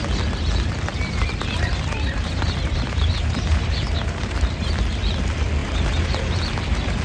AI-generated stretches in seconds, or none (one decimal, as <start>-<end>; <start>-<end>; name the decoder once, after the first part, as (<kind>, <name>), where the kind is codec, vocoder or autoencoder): 0.9-4.7 (vocoder, BigVGAN v2); 5.6-6.4